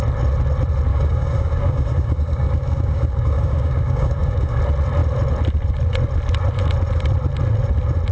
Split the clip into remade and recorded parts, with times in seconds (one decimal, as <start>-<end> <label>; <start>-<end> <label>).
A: 0.0-0.9 recorded; 0.9-4.6 remade; 4.6-8.1 recorded